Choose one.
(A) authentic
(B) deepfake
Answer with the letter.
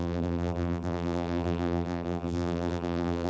B